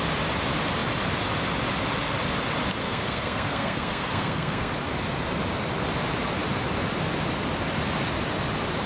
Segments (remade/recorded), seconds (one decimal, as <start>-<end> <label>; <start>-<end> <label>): 0.0-2.8 recorded; 2.8-4.7 remade; 4.7-8.9 recorded